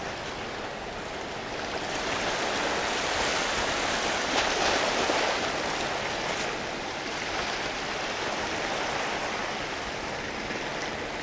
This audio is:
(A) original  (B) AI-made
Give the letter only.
A